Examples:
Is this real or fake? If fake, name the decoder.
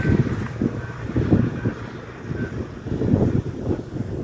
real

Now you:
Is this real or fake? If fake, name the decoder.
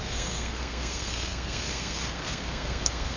fake, codec, SNAC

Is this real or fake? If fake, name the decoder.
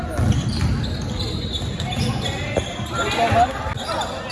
real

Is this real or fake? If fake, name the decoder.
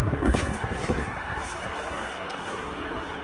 fake, codec, SNAC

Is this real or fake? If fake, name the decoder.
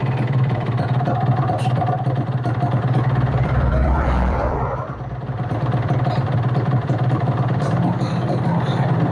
fake, vocoder, BigVGAN v2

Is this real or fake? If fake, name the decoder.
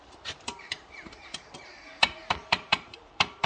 fake, vocoder, BigVGAN v2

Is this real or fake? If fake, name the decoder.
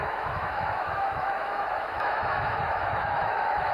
fake, autoencoder, DAC-VAE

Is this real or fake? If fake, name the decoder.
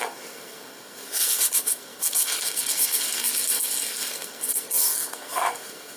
fake, codec, SNAC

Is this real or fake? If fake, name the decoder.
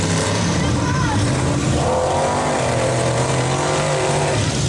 fake, vocoder, BigVGAN v2